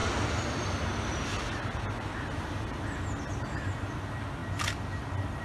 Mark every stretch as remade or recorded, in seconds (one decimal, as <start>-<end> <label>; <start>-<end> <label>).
0.0-5.4 recorded